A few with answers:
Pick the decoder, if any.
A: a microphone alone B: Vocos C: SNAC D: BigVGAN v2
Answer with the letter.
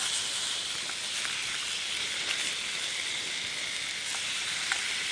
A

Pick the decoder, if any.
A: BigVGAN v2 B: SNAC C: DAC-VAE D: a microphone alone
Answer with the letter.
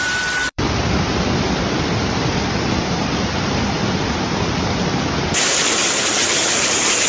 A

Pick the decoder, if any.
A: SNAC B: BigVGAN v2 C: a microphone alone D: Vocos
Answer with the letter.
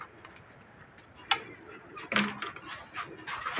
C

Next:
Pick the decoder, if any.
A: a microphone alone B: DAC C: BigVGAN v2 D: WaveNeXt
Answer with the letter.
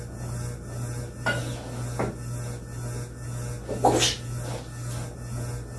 A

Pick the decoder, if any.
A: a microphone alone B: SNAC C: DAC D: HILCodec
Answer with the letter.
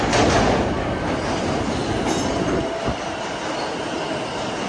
A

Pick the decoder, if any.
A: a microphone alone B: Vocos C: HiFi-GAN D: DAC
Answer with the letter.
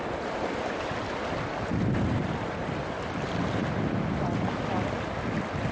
A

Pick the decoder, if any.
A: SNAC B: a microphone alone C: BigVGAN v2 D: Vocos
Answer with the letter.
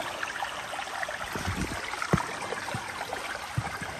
B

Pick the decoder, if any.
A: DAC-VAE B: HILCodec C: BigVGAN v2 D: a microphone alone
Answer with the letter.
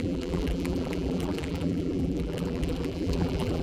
C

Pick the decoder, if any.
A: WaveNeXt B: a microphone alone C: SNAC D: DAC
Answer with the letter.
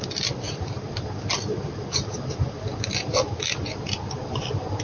B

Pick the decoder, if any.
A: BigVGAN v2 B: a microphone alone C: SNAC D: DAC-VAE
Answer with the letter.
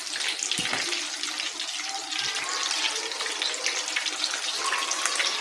B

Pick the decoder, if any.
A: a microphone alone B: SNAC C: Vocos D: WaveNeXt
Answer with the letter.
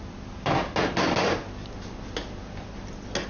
A